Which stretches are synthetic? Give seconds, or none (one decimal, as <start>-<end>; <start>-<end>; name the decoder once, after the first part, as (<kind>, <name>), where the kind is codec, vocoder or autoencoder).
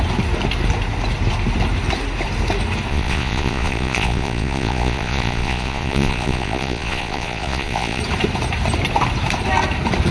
2.9-8.0 (vocoder, Vocos)